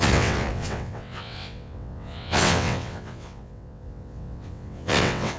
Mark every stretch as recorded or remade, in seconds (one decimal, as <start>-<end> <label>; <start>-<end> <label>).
0.0-5.4 remade